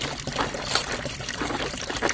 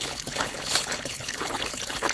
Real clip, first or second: first